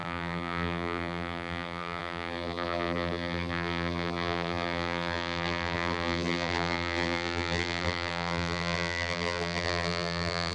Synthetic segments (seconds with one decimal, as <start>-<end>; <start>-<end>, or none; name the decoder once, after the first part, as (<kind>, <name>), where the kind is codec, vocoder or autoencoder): 0.0-10.5 (vocoder, BigVGAN v2)